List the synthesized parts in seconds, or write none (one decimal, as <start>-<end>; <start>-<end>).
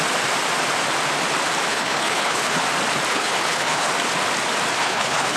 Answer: 1.7-2.6; 3.1-3.9; 4.8-5.4